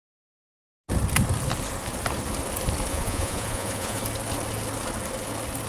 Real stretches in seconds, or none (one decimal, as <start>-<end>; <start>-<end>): 0.0-2.9; 4.0-5.7